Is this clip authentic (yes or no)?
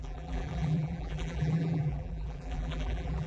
no